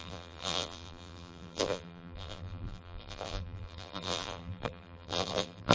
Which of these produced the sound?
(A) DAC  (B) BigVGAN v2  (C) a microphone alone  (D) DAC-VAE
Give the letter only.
B